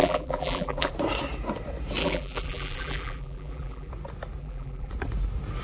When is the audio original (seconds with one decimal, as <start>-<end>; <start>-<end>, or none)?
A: 0.9-2.0; 3.9-4.4; 4.9-5.6